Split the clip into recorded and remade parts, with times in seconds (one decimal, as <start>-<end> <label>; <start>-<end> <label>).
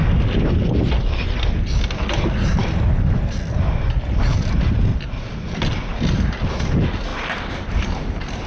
0.0-4.9 recorded; 4.9-5.6 remade; 5.6-7.1 recorded; 7.1-8.5 remade